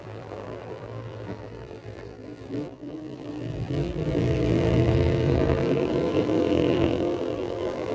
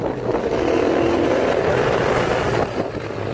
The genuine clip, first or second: second